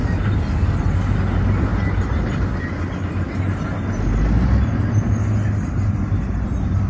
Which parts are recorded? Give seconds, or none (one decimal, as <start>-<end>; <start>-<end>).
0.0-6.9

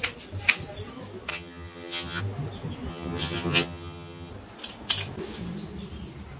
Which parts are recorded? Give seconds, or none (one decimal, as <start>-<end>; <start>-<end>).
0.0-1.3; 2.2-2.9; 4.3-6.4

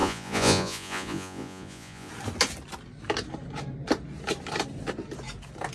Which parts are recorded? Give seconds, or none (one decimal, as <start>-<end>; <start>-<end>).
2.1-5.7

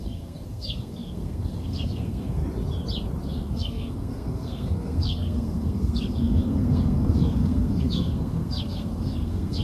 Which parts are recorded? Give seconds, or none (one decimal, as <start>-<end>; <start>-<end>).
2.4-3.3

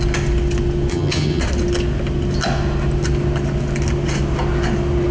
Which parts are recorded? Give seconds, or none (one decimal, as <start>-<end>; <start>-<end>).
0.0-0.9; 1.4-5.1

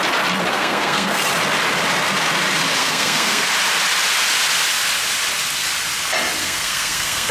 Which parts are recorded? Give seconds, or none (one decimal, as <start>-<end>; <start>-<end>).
0.0-0.5; 1.2-2.8; 3.5-6.4

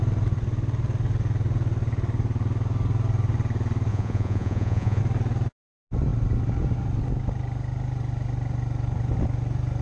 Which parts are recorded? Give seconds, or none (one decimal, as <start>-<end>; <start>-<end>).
0.0-3.9; 5.0-9.8